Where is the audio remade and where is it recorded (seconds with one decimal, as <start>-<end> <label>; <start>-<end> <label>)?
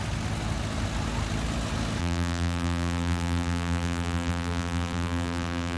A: 0.0-2.0 recorded; 2.0-5.8 remade